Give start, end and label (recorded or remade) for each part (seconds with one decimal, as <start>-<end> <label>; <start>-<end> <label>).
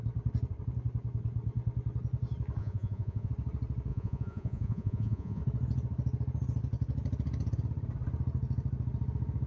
0.0-2.6 recorded; 2.6-3.3 remade; 3.3-3.9 recorded; 3.9-5.4 remade; 5.4-9.5 recorded